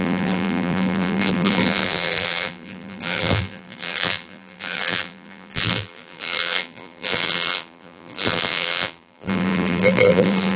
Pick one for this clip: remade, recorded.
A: remade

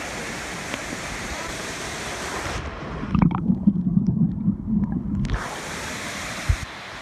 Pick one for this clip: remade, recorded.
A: remade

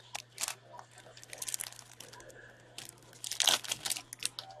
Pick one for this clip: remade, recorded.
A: recorded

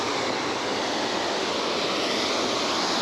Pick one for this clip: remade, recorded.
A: recorded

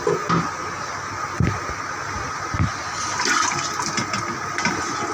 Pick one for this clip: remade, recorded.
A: recorded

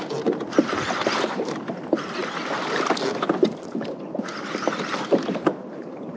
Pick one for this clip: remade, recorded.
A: remade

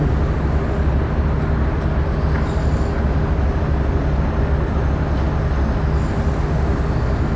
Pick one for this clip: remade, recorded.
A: recorded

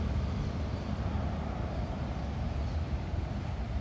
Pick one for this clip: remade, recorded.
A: recorded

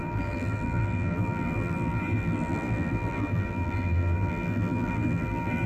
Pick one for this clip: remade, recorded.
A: remade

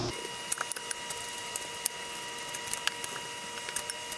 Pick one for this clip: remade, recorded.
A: recorded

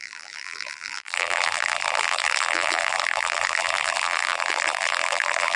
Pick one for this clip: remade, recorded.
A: remade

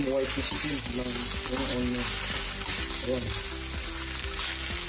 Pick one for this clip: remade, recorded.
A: recorded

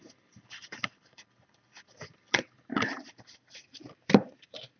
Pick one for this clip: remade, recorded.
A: remade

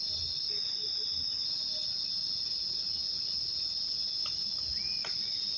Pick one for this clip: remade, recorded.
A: recorded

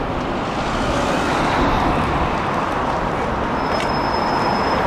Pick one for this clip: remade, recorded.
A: recorded